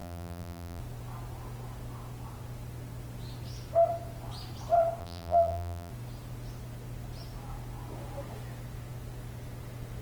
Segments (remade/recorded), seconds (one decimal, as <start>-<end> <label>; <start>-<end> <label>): 0.0-0.8 remade; 0.8-5.0 recorded; 5.0-5.9 remade; 5.9-10.0 recorded